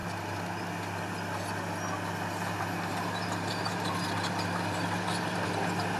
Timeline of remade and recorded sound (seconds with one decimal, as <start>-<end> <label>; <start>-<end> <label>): 0.0-6.0 recorded